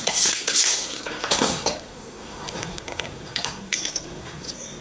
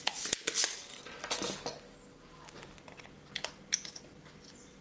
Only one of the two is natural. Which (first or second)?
second